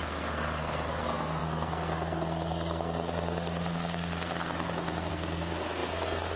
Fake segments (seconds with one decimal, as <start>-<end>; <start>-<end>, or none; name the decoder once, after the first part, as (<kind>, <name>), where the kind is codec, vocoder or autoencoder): 0.0-6.4 (codec, SNAC)